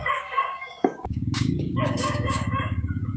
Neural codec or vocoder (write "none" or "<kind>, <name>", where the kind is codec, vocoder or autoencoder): codec, DAC